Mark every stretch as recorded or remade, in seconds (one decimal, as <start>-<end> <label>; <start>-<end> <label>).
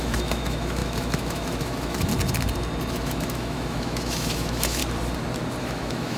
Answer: 0.0-2.1 remade; 2.1-2.9 recorded; 2.9-4.8 remade; 4.8-5.6 recorded; 5.6-6.2 remade